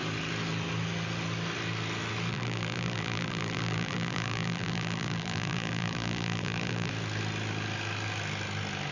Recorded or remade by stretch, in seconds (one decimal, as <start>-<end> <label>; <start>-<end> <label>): 0.0-2.3 recorded; 2.3-6.9 remade; 6.9-8.9 recorded